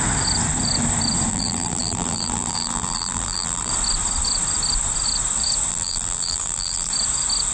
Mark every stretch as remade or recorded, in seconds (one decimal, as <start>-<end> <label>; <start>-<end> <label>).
0.0-1.3 recorded; 1.3-3.7 remade; 3.7-5.7 recorded; 5.7-6.9 remade; 6.9-7.5 recorded